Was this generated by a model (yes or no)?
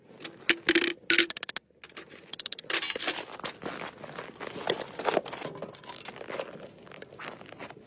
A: no